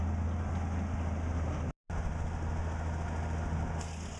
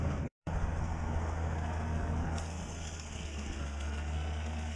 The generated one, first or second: second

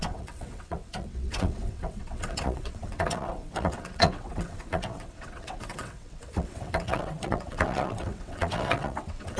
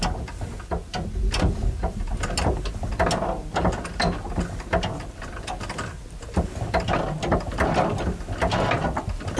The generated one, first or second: first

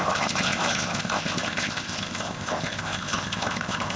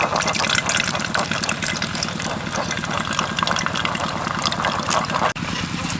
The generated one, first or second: first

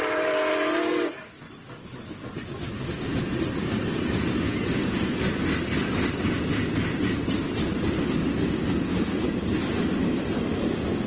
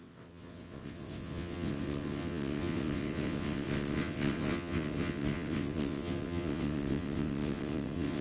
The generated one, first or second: second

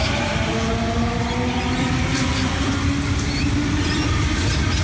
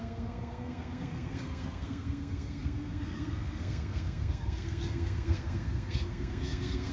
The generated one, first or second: second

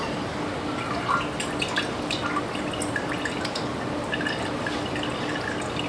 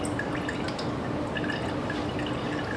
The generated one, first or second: first